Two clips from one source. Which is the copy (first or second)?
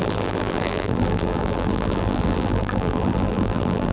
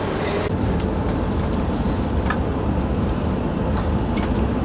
first